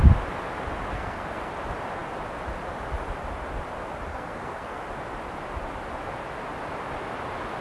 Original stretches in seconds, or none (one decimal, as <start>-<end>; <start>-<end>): 0.0-0.9; 1.5-4.1; 4.8-7.6